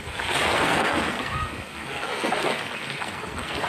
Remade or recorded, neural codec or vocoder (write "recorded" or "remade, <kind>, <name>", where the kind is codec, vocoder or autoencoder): remade, codec, SNAC